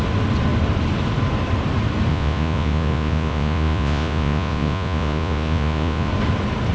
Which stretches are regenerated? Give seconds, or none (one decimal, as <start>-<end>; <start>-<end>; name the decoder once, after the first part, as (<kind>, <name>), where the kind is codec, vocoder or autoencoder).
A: 2.1-6.1 (vocoder, Vocos)